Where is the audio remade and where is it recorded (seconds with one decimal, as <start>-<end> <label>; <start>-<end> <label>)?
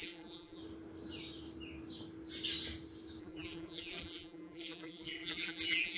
0.0-0.6 remade; 0.6-3.2 recorded; 3.2-6.0 remade